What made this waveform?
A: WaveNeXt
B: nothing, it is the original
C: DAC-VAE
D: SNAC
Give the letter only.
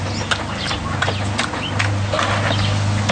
B